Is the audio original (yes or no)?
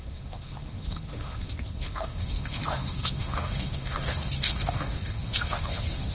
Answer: no